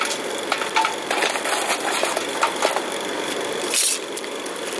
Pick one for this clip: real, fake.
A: real